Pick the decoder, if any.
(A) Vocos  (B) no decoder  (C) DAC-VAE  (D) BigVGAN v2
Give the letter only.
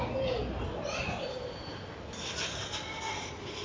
B